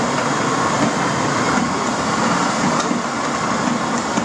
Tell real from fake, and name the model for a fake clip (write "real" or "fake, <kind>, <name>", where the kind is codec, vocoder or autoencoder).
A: real